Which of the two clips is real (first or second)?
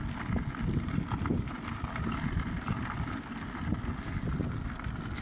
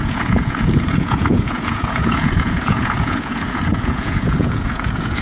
first